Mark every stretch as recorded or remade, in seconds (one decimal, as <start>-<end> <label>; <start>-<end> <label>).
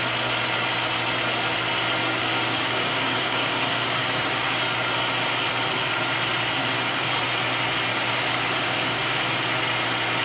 0.0-2.0 recorded; 2.0-4.6 remade; 4.6-6.6 recorded; 6.6-7.2 remade; 7.2-7.9 recorded; 7.9-9.2 remade; 9.2-10.2 recorded